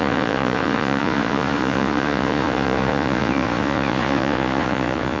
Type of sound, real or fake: fake